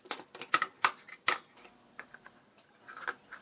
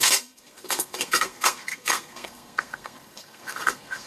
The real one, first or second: first